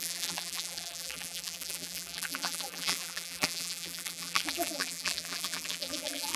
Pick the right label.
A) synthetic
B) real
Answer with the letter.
A